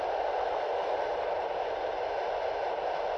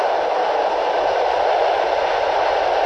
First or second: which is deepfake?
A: second